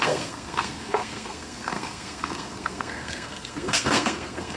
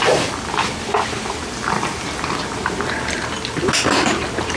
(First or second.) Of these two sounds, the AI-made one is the first